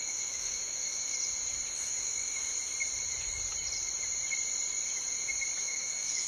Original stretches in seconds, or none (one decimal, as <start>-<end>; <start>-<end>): 1.1-1.7; 2.5-5.6